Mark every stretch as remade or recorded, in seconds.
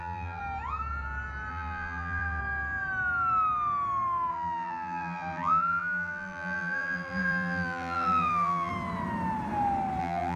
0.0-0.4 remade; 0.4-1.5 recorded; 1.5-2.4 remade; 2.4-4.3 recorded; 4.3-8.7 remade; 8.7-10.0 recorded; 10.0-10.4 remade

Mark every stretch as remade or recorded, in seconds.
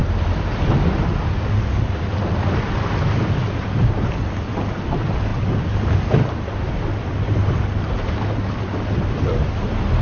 0.0-1.0 remade; 1.0-10.0 recorded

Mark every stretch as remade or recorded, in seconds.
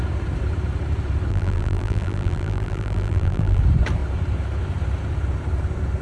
0.0-1.3 recorded; 1.3-3.6 remade; 3.6-6.0 recorded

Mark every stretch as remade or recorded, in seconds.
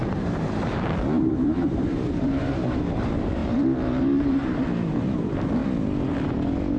0.0-5.6 remade; 5.6-6.8 recorded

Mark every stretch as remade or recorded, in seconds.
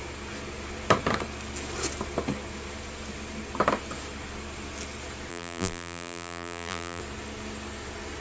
0.0-5.3 recorded; 5.3-7.0 remade; 7.0-8.2 recorded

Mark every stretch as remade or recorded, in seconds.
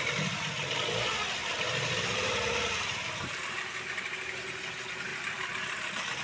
0.0-1.4 recorded; 1.4-2.7 remade; 2.7-5.1 recorded; 5.1-6.2 remade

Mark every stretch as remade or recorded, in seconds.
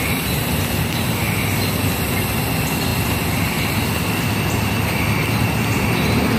0.0-6.4 recorded